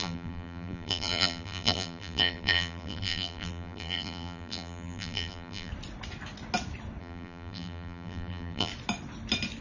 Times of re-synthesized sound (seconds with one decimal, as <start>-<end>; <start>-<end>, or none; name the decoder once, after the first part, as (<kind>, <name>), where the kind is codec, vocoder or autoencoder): 0.0-5.7 (vocoder, BigVGAN v2); 7.0-8.7